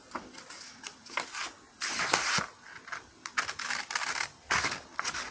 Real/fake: real